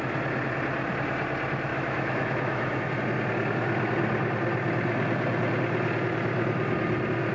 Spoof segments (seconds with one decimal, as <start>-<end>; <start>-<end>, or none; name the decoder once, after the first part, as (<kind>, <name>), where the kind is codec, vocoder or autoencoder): 1.7-2.9 (autoencoder, DAC-VAE)